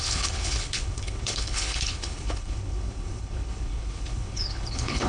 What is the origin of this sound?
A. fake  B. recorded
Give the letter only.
A